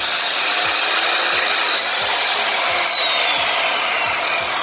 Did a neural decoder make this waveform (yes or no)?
no